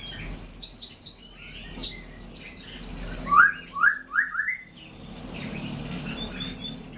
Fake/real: real